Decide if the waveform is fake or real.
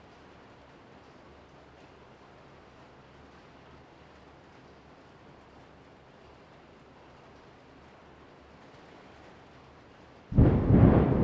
real